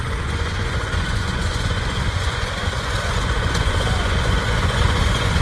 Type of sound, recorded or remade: remade